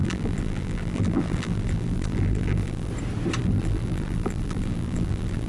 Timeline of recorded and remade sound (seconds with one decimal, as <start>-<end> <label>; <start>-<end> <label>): 0.0-2.9 remade; 2.9-3.4 recorded; 3.4-5.5 remade